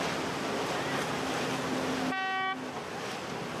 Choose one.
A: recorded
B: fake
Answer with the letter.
A